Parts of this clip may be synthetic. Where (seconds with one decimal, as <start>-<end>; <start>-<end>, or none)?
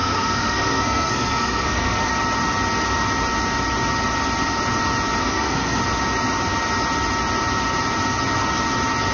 0.0-2.1; 5.2-5.8